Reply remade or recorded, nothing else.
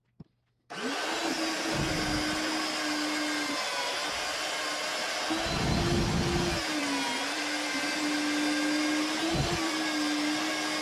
recorded